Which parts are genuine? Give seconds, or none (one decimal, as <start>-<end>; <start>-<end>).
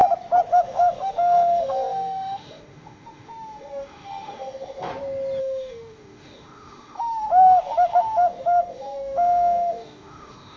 0.0-0.5; 4.9-5.4